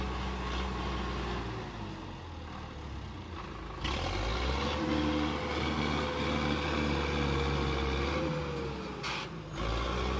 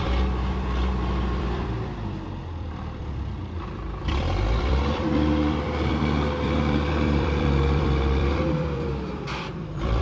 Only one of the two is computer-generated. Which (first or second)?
second